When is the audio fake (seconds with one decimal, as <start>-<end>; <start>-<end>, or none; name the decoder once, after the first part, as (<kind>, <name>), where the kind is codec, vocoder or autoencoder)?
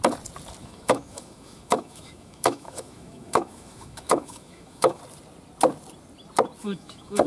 0.6-5.0 (autoencoder, DAC-VAE); 6.6-7.3